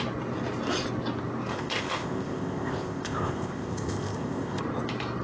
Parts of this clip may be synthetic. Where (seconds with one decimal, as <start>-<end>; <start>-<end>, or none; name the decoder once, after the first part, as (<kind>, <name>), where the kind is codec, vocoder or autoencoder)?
1.5-4.6 (codec, ZipCodec)

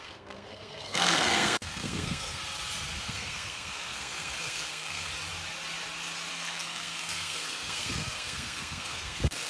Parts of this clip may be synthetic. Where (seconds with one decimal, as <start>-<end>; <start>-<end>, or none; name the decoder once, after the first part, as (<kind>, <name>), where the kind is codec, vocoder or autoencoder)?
0.0-2.4 (codec, SNAC); 3.0-5.1; 6.3-9.5

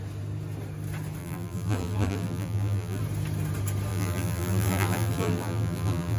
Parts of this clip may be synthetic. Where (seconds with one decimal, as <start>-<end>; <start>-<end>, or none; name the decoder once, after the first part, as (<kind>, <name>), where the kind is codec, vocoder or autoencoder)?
1.2-3.0 (vocoder, BigVGAN v2); 3.9-6.2

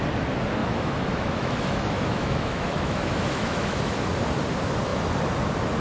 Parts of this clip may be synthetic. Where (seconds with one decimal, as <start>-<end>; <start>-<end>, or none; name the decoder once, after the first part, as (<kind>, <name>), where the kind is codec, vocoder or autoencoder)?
0.6-4.1 (autoencoder, DAC-VAE)